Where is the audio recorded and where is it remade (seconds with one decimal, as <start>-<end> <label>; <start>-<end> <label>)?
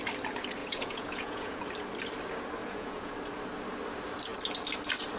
0.0-0.6 recorded; 0.6-1.6 remade; 1.6-2.6 recorded; 2.6-3.1 remade; 3.1-5.2 recorded